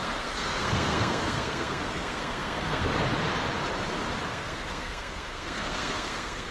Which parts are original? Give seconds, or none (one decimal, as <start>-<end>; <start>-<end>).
2.9-4.3